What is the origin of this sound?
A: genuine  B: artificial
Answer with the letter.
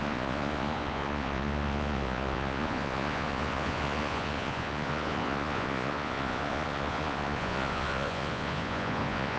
B